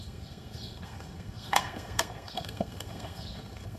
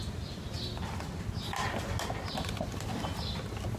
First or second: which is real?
second